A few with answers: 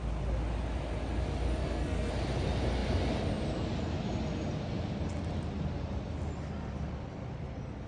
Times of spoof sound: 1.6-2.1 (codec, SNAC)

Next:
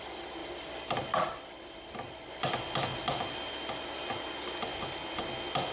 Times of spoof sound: none